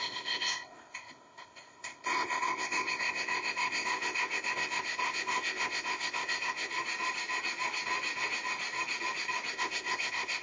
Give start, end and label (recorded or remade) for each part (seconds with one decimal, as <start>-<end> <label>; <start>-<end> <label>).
0.0-6.7 remade; 6.7-9.5 recorded; 9.5-10.4 remade